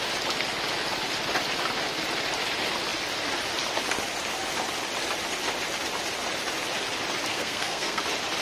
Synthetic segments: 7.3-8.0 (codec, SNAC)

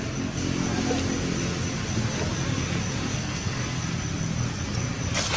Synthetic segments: 3.1-3.6 (codec, SNAC)

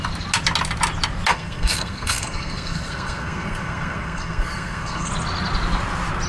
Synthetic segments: 1.3-5.1 (codec, SNAC)

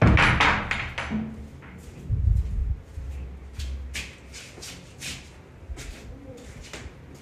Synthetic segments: none

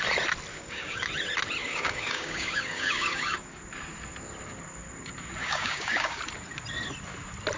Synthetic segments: 0.5-1.1 (codec, DAC); 1.6-3.6; 5.4-6.2

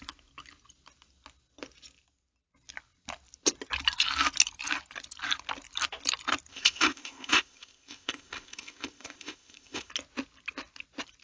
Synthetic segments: 6.5-9.9 (codec, ZipCodec)

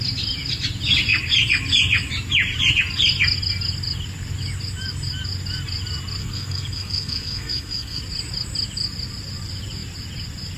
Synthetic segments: 6.2-8.0 (codec, SNAC)

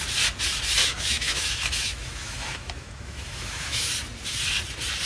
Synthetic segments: 0.8-3.9 (autoencoder, DAC-VAE)